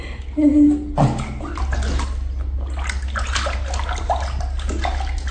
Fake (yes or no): no